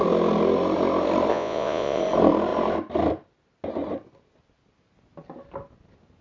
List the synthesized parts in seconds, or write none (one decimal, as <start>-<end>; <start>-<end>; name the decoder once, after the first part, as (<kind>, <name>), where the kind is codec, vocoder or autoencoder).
1.3-2.0 (vocoder, Vocos)